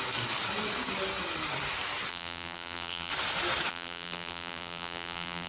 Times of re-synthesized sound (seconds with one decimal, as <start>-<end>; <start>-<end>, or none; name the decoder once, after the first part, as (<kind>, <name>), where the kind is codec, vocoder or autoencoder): 2.1-3.1 (vocoder, BigVGAN v2); 3.7-5.5